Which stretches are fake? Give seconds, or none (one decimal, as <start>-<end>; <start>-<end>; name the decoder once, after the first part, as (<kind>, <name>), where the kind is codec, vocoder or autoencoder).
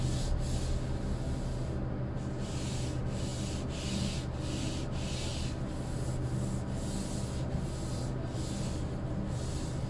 none